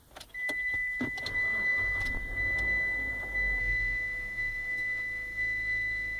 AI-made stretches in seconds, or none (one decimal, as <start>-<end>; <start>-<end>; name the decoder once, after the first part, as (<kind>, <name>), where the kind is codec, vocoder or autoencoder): 3.6-6.2 (autoencoder, DAC-VAE)